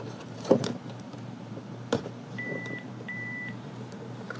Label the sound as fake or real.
fake